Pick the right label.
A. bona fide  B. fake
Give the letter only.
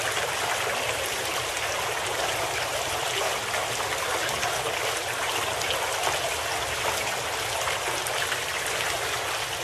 A